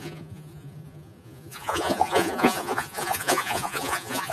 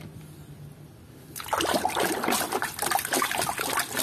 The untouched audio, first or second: second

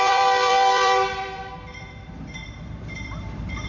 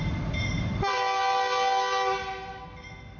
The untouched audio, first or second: second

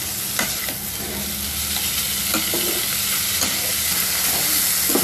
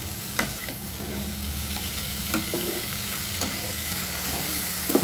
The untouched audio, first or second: first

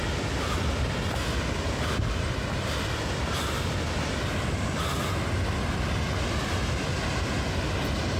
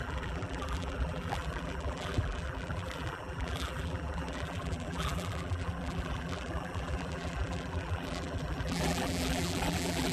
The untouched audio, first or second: first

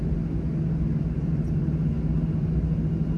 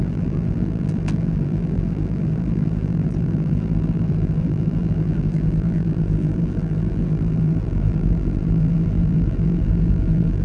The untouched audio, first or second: first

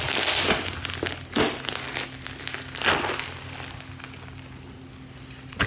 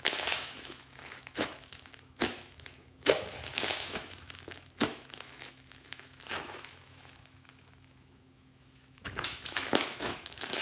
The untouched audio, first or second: first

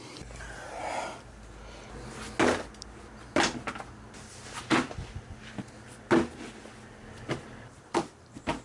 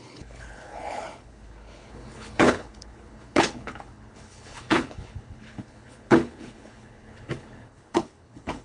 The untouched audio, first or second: first